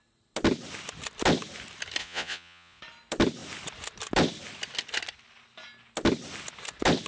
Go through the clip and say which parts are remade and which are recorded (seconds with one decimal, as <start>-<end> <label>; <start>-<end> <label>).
0.0-2.0 recorded; 2.0-2.8 remade; 2.8-7.1 recorded